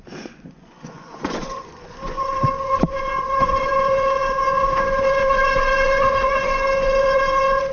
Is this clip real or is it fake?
fake